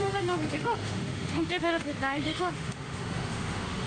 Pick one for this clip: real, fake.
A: fake